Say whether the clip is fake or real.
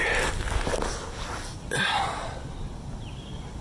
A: real